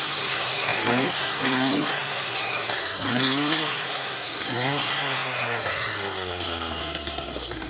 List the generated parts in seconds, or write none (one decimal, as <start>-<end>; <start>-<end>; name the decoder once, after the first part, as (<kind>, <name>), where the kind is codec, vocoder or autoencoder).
0.0-7.7 (codec, SNAC)

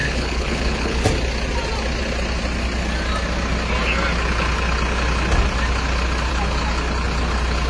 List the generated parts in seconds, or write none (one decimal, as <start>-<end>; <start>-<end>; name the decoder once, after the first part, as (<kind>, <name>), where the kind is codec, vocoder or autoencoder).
0.0-1.0 (codec, HILCodec)

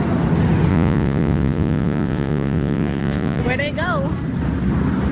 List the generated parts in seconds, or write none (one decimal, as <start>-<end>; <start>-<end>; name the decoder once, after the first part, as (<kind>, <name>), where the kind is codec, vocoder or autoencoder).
0.7-3.4 (vocoder, Vocos)

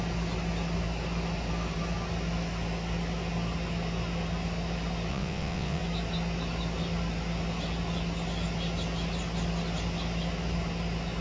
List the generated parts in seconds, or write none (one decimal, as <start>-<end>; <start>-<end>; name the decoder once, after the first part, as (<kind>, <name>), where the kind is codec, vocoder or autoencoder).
5.1-5.8 (vocoder, WaveNeXt)

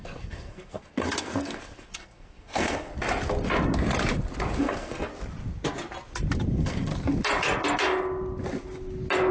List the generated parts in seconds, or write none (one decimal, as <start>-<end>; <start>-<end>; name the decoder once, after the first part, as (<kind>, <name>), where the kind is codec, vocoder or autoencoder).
0.0-2.9 (codec, SNAC); 4.6-5.1; 6.5-6.9

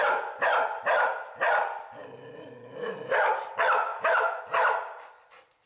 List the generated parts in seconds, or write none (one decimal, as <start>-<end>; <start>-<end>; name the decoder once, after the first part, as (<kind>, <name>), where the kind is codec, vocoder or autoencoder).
3.9-4.4 (autoencoder, DAC-VAE)